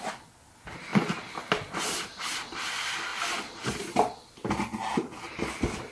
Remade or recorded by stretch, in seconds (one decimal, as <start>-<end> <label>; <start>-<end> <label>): 0.0-5.9 recorded